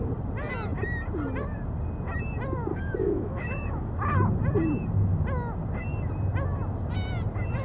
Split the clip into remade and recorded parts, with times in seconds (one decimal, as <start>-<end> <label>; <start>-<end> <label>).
0.0-2.7 recorded; 2.7-3.9 remade; 3.9-7.6 recorded